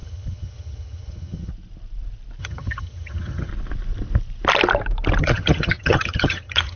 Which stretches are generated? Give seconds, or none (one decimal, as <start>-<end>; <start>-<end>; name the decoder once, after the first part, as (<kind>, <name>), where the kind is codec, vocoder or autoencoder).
0.0-1.5 (vocoder, HiFi-GAN); 2.4-3.5; 5.2-6.8